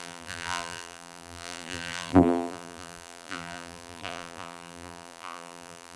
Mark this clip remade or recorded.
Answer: remade